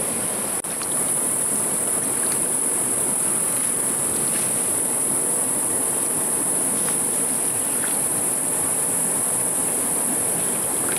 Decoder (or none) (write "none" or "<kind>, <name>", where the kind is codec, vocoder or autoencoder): none